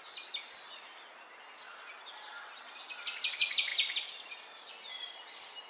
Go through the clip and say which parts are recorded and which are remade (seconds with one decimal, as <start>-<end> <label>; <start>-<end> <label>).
0.0-5.7 recorded